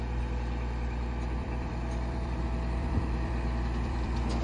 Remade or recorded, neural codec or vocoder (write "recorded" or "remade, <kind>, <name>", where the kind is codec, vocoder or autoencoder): remade, vocoder, BigVGAN v2